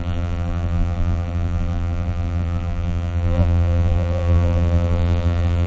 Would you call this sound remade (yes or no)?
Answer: yes